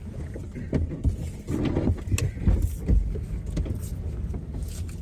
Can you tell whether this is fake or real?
real